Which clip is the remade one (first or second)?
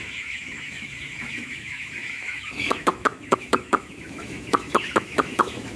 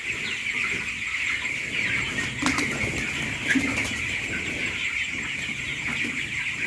first